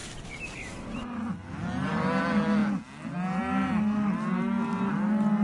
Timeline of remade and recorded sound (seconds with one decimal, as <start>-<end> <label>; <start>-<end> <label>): 0.0-5.4 recorded